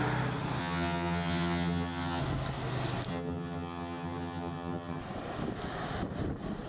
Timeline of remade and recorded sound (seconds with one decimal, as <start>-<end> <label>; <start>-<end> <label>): 0.0-0.6 recorded; 0.6-2.2 remade; 2.2-3.1 recorded; 3.1-5.0 remade; 5.0-6.7 recorded